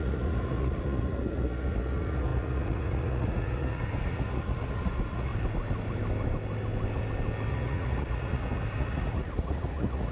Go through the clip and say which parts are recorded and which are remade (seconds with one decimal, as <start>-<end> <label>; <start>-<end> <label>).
0.0-5.3 remade; 5.3-7.5 recorded; 7.5-10.1 remade